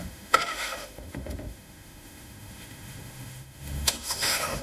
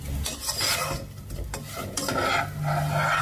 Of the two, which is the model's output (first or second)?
first